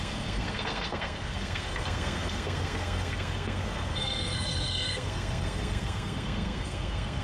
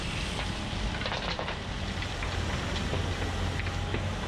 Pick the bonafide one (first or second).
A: second